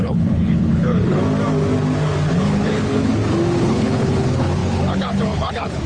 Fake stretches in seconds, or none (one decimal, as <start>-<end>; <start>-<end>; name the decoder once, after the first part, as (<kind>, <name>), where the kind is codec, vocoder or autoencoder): 0.0-1.2 (codec, HILCodec); 2.3-3.1; 3.6-5.9